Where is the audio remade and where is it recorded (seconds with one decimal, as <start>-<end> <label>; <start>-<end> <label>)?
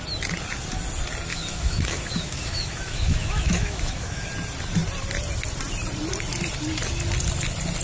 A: 0.0-1.3 recorded; 1.3-4.3 remade; 4.3-7.8 recorded